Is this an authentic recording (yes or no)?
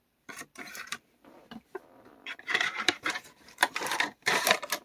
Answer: no